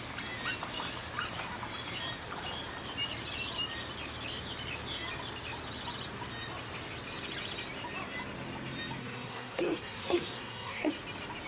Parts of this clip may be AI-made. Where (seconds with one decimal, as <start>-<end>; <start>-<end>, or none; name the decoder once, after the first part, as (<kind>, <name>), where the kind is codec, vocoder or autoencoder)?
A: 9.0-10.9 (codec, SNAC)